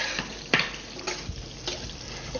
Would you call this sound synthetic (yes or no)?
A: no